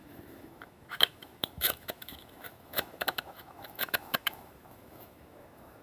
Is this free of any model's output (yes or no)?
no